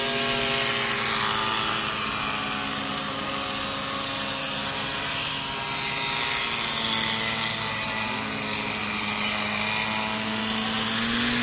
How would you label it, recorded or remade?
recorded